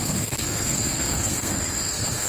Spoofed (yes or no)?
yes